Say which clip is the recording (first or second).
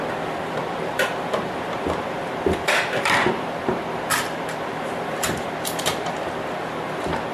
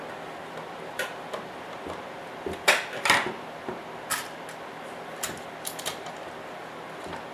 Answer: second